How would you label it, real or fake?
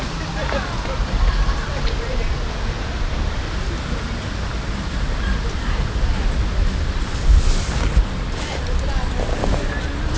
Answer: real